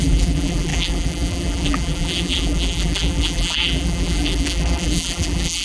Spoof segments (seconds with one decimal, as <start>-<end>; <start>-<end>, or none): 0.0-5.6